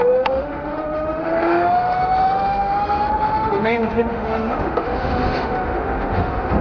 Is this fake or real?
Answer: fake